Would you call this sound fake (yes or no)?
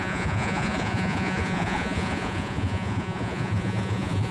yes